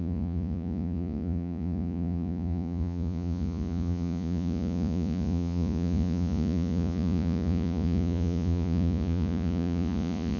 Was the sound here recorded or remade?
remade